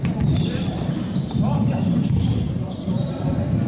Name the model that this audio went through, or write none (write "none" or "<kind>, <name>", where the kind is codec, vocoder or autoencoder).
vocoder, BigVGAN v2